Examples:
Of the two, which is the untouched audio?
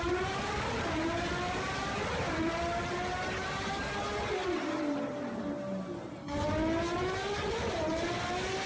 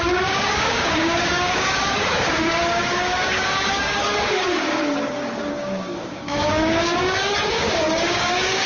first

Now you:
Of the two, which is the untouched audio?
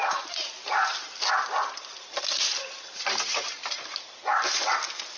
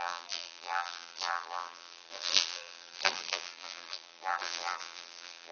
first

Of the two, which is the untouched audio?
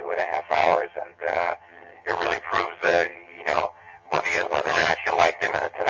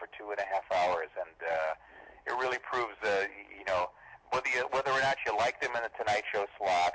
second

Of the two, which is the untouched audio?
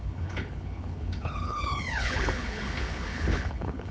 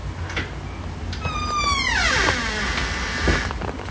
second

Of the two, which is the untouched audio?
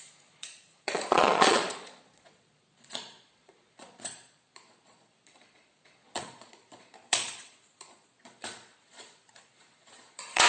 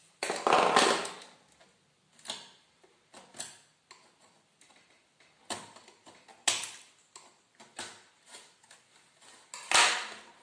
second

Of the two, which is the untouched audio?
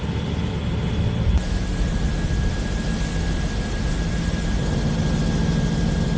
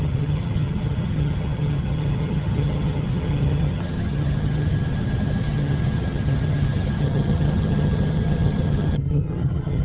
first